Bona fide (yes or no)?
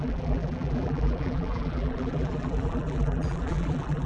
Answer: no